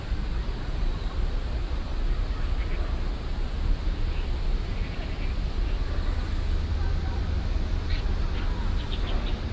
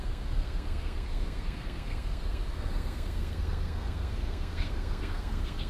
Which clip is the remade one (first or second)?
second